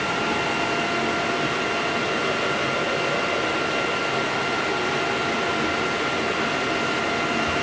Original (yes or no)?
yes